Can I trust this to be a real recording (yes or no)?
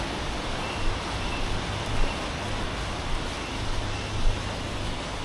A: yes